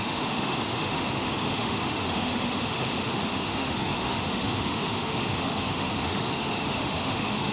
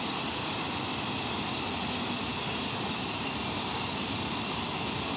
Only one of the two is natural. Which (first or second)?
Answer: second